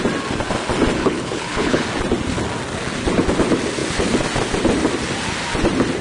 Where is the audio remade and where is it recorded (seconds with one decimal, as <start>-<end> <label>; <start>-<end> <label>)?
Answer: 0.0-1.0 recorded; 1.0-1.8 remade; 1.8-6.0 recorded